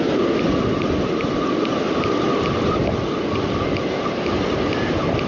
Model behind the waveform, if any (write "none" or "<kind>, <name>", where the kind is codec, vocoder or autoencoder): none